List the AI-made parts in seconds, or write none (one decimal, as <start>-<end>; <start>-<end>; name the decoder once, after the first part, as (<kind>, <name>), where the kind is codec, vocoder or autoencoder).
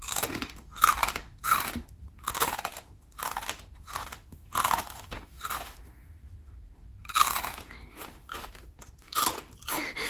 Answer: 0.0-9.2 (autoencoder, DAC-VAE); 9.7-10.1